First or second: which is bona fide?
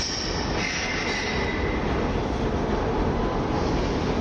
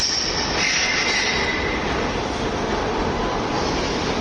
first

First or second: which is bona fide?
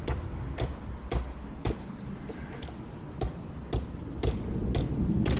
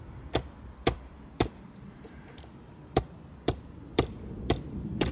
first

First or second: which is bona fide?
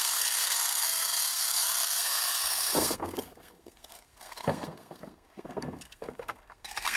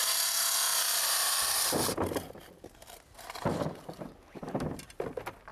second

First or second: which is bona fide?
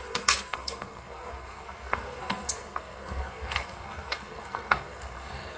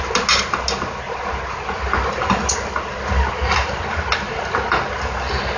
second